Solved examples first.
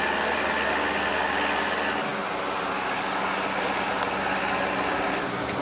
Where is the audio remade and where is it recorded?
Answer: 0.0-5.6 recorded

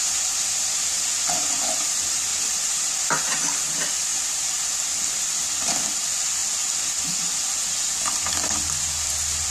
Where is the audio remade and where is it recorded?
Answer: 0.0-2.3 recorded; 2.3-3.5 remade; 3.5-4.1 recorded; 4.1-4.7 remade; 4.7-9.5 recorded

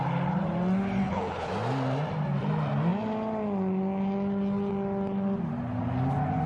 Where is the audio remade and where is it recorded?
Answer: 0.0-1.0 recorded; 1.0-1.5 remade; 1.5-6.5 recorded